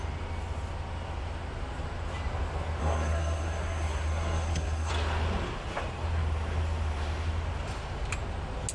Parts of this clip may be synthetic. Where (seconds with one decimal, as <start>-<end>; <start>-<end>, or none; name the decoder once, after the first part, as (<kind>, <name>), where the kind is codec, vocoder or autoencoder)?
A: 2.8-4.9 (codec, SNAC)

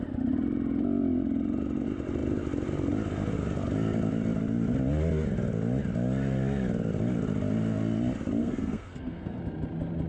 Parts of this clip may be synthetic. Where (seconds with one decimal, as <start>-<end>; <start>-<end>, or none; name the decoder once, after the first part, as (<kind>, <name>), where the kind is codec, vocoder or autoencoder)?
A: 8.4-9.4 (codec, SNAC)

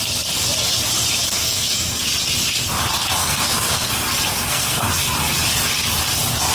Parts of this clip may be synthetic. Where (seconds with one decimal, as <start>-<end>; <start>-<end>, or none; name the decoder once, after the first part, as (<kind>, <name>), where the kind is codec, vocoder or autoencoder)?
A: 1.3-2.1 (codec, SNAC); 3.2-3.9; 4.3-4.9

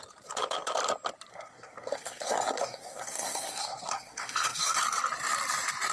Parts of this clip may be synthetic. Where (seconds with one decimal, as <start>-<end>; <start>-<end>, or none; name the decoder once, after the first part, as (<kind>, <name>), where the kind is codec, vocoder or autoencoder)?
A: 1.3-4.8 (codec, SNAC)

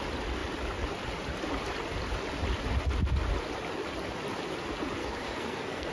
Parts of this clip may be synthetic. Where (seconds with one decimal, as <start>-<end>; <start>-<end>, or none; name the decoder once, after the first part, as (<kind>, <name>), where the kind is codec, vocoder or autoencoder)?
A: 5.0-5.9 (codec, SNAC)